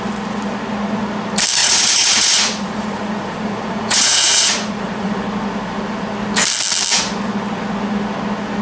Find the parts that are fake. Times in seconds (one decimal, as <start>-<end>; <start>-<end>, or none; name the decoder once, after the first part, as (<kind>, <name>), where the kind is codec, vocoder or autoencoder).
1.6-5.1 (vocoder, Vocos)